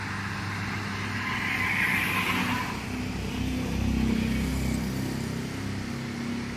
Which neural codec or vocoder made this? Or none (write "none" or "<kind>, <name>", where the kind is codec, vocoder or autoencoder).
none